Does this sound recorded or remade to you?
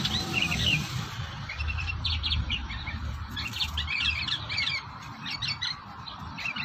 remade